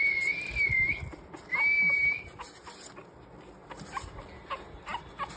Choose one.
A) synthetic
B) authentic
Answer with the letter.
B